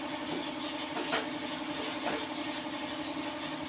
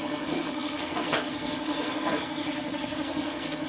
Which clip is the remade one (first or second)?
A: second